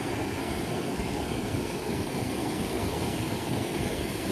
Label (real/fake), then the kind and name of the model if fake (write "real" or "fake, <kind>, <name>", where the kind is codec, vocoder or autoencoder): fake, codec, SNAC